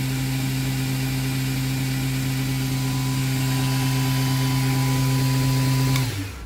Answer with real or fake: real